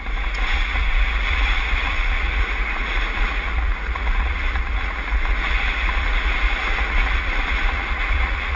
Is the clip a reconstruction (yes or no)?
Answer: yes